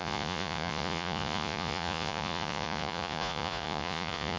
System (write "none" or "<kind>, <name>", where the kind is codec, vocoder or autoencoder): vocoder, Vocos